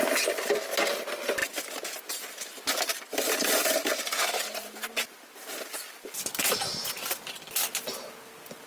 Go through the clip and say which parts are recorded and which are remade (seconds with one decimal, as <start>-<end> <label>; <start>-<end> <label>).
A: 0.0-8.7 recorded